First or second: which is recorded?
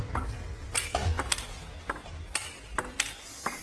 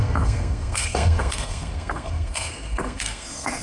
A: first